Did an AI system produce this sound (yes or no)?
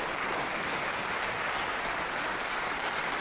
no